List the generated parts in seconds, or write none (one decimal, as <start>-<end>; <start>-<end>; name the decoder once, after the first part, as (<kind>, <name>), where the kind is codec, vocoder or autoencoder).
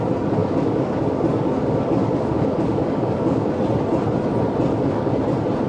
0.4-3.5 (codec, DAC); 4.7-5.2